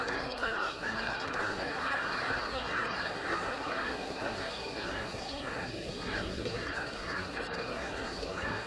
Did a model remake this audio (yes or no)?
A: yes